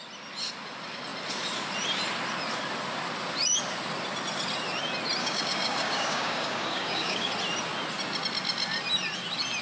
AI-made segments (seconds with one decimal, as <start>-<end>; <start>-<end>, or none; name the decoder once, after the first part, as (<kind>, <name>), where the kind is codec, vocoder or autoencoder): 5.2-7.3 (codec, DAC)